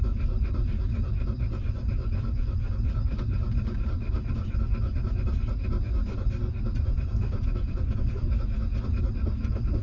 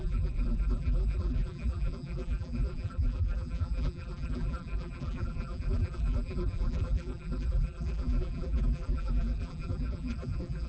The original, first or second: first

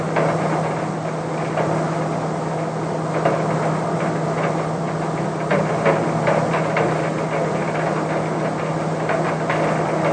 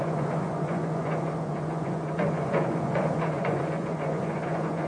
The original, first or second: first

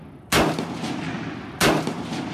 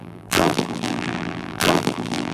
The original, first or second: first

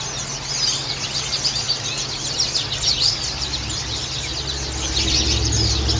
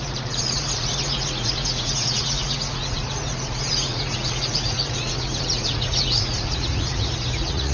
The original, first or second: first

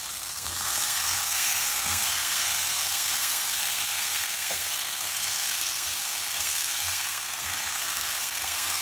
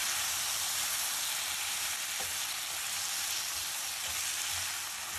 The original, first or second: second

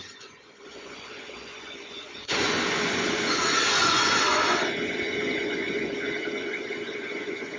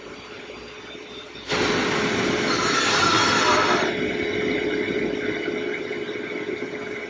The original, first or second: second